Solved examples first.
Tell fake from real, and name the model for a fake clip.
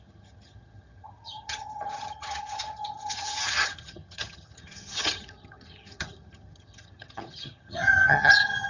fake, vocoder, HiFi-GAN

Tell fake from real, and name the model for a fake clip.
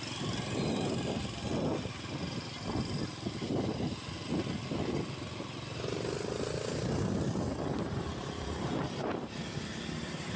real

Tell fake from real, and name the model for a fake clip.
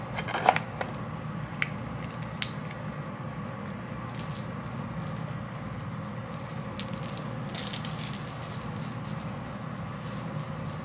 real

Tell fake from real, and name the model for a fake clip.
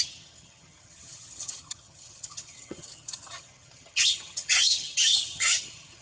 fake, vocoder, HiFi-GAN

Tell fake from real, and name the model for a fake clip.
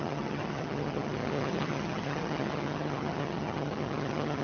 fake, vocoder, HiFi-GAN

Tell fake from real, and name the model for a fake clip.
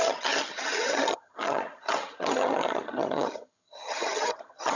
fake, vocoder, HiFi-GAN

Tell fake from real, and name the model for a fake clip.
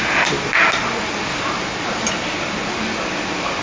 real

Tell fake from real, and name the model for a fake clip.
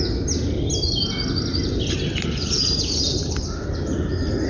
real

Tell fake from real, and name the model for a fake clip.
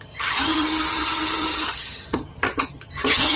fake, vocoder, HiFi-GAN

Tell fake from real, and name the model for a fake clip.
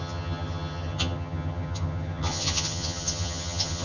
fake, vocoder, HiFi-GAN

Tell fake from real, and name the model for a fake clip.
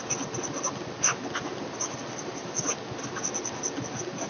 real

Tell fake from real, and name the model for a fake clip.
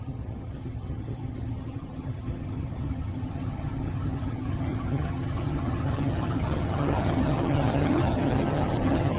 fake, vocoder, HiFi-GAN